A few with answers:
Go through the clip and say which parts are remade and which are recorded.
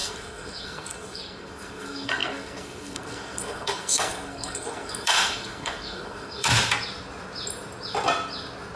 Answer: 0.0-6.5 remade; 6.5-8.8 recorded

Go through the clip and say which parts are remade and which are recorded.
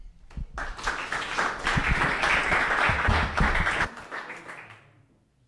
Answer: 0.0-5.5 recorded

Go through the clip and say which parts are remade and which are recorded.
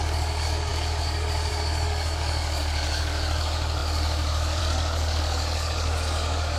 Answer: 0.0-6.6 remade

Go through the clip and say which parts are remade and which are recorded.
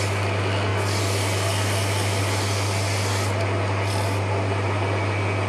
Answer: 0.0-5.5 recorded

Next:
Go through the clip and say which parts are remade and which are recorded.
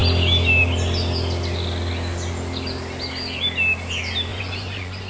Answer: 0.0-4.3 recorded; 4.3-5.1 remade